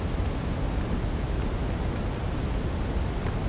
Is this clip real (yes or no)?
yes